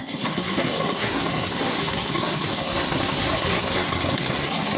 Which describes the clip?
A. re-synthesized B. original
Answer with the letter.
A